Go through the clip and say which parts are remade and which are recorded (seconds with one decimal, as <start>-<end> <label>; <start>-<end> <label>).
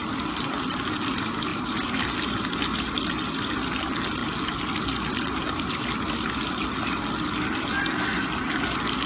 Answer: 0.0-1.5 recorded; 1.5-2.0 remade; 2.0-9.1 recorded